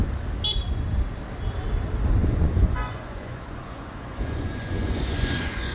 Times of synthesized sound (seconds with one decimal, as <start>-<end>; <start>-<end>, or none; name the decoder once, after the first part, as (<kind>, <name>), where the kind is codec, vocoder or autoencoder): 2.2-5.7 (vocoder, Vocos)